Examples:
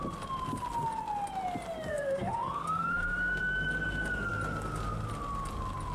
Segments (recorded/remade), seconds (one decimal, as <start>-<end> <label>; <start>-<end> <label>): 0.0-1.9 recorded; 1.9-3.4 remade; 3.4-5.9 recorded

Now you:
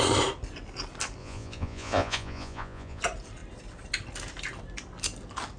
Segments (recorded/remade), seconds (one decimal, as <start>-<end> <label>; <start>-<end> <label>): 0.0-1.2 recorded; 1.2-3.0 remade; 3.0-5.6 recorded

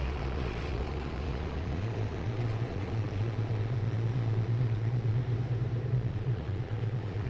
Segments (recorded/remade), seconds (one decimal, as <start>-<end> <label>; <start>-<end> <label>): 0.0-5.2 remade; 5.2-5.9 recorded; 5.9-7.3 remade

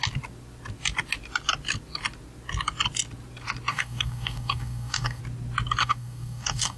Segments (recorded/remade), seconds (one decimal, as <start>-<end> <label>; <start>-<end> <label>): 0.0-3.7 recorded; 3.7-5.2 remade; 5.2-5.8 recorded; 5.8-6.8 remade

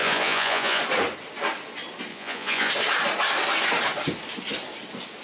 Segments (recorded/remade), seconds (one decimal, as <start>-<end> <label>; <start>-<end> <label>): 0.0-0.8 remade; 0.8-2.1 recorded; 2.1-2.7 remade; 2.7-5.2 recorded